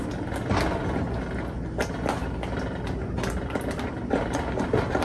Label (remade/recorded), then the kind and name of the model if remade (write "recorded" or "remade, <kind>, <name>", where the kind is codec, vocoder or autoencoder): recorded